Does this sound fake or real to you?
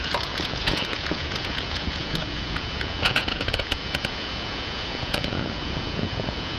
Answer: fake